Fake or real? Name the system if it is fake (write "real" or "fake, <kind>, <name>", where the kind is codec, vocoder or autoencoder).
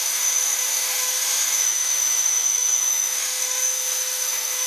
fake, autoencoder, DAC-VAE